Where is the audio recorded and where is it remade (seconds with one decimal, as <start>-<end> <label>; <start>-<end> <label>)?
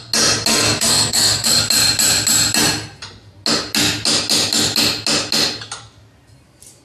0.0-0.5 recorded; 0.5-1.6 remade; 1.6-6.8 recorded